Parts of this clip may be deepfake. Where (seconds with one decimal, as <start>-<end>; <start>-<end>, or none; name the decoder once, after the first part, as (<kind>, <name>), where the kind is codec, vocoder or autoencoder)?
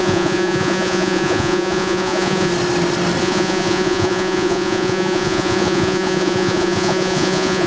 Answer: 0.0-2.5 (vocoder, Vocos); 3.2-7.7